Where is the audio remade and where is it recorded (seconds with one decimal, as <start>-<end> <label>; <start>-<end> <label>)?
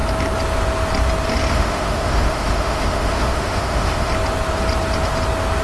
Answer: 0.0-1.5 recorded; 1.5-4.1 remade; 4.1-5.6 recorded